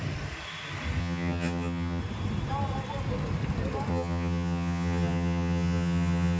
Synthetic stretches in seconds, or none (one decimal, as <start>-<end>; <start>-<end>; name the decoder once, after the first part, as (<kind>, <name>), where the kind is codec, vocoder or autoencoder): 1.0-2.0 (vocoder, HiFi-GAN); 3.9-6.4